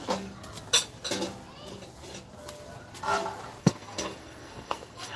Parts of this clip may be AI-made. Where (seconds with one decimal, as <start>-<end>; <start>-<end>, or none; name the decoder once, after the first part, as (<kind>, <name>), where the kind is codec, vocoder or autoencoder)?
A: 3.6-5.2 (codec, SNAC)